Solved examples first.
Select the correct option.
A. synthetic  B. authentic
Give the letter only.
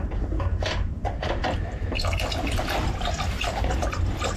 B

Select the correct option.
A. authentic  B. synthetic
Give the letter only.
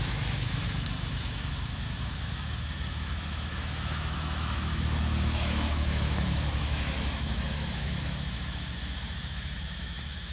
B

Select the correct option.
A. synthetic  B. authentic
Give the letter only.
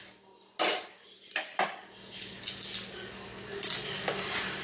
B